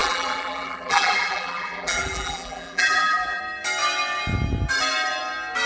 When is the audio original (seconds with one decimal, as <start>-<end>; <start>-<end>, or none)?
3.4-5.7